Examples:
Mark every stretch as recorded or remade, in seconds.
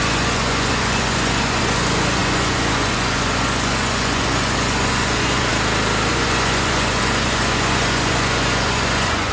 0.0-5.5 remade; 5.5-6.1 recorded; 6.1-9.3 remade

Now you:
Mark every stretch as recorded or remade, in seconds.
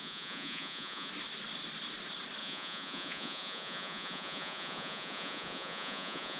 0.0-1.1 remade; 1.1-2.4 recorded; 2.4-6.4 remade